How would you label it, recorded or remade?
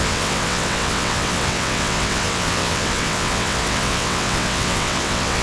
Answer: remade